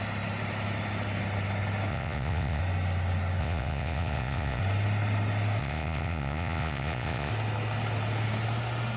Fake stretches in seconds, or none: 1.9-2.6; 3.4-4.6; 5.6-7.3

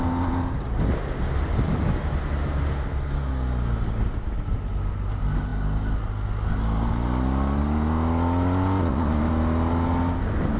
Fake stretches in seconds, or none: none

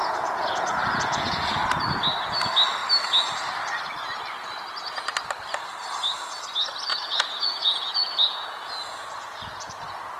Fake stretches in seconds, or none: 0.0-1.6; 6.9-9.7

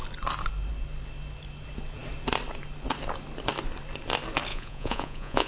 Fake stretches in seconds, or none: 4.5-5.5

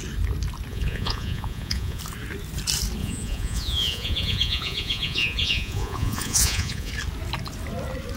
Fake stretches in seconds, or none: 0.7-2.0; 3.0-6.9

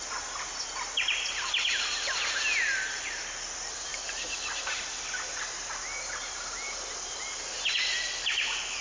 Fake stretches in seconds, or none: none

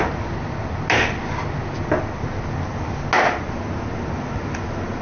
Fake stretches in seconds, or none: none

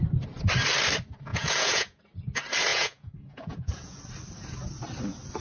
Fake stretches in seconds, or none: 1.3-2.0; 2.7-4.0